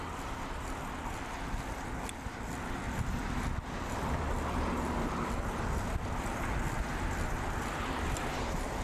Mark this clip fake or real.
real